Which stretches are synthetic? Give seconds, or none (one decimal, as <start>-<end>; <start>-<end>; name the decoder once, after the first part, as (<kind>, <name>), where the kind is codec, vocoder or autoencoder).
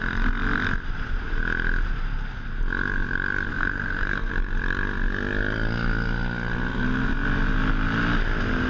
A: 3.5-4.3 (codec, SNAC)